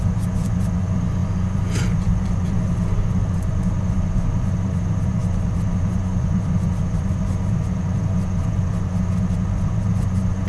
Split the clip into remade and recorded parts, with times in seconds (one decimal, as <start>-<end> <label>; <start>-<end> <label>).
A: 0.0-10.5 remade